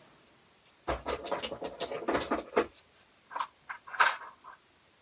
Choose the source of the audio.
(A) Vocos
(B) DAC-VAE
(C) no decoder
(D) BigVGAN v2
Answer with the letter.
C